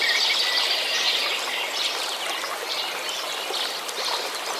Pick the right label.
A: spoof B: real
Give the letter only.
B